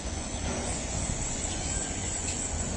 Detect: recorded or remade remade